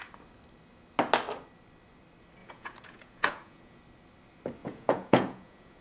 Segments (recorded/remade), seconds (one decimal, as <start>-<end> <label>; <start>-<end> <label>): 0.0-2.4 recorded; 2.4-3.8 remade; 3.8-4.6 recorded; 4.6-5.8 remade